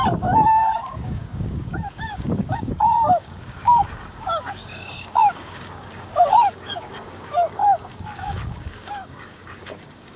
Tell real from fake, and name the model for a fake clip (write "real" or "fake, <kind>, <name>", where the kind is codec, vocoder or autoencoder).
fake, codec, DAC